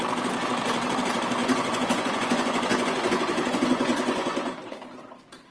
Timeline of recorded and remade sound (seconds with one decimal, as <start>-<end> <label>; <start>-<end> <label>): 0.0-1.4 recorded; 1.4-4.6 remade; 4.6-5.5 recorded

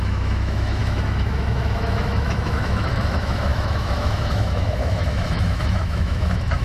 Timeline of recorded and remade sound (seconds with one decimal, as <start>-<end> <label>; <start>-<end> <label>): 0.0-6.6 remade

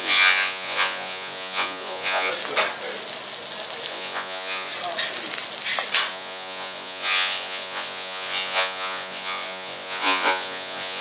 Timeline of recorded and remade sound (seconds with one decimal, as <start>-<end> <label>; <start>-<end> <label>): 0.0-2.3 remade; 2.3-3.9 recorded; 3.9-4.7 remade; 4.7-6.1 recorded; 6.1-11.0 remade

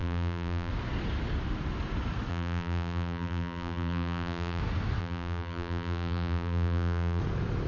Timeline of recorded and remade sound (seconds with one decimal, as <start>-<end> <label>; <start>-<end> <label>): 0.0-0.7 remade; 0.7-2.3 recorded; 2.3-4.6 remade; 4.6-5.0 recorded; 5.0-7.2 remade; 7.2-7.7 recorded

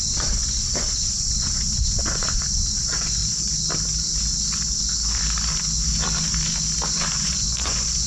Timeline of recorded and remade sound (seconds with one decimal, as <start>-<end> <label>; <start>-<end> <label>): 0.0-3.2 remade; 3.2-7.2 recorded; 7.2-8.1 remade

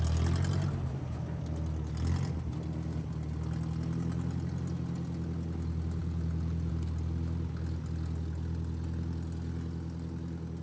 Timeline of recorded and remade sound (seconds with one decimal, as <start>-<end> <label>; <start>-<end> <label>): 0.0-6.0 recorded; 6.0-6.7 remade; 6.7-10.6 recorded

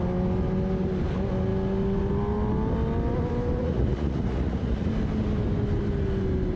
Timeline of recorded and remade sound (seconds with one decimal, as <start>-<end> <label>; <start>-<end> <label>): 0.0-3.6 recorded; 3.6-4.9 remade; 4.9-6.6 recorded

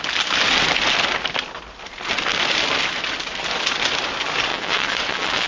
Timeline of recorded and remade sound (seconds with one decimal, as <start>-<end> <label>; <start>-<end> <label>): 0.0-4.5 recorded; 4.5-5.5 remade